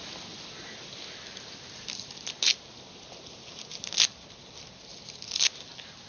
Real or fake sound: real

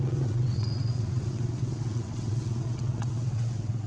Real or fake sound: fake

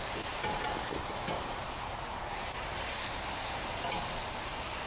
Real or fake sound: fake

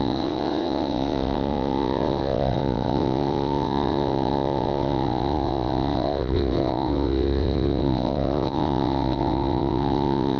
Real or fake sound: fake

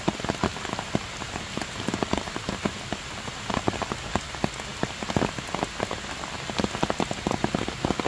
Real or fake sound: real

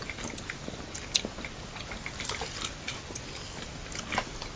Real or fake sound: real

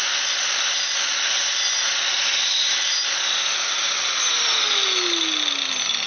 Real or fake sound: real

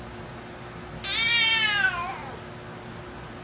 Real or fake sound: real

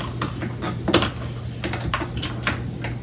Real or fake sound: real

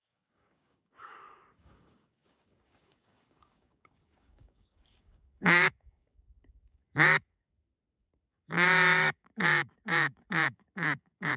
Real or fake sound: fake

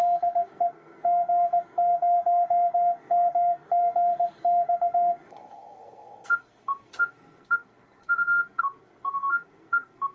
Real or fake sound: fake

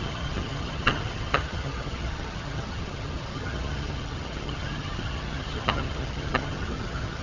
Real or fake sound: fake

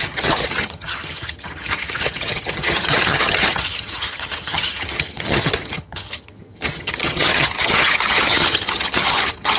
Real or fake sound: fake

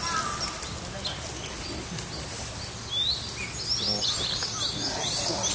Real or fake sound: real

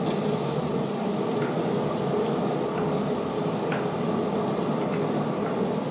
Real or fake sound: real